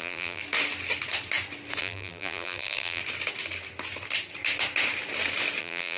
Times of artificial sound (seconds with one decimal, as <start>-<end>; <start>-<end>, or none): 0.0-0.4; 1.8-3.0; 5.6-6.0